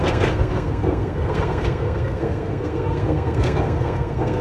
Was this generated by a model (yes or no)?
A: yes